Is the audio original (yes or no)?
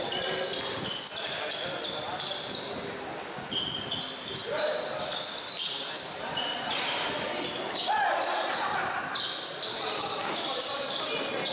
yes